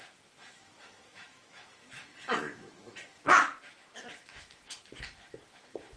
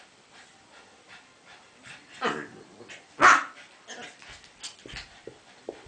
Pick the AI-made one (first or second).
first